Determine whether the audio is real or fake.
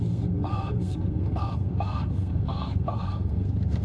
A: fake